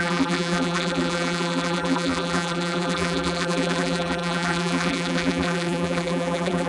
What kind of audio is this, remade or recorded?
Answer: remade